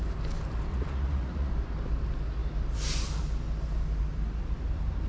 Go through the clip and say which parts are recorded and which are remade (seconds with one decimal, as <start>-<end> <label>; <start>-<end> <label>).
0.0-0.7 recorded; 0.7-1.5 remade; 1.5-5.1 recorded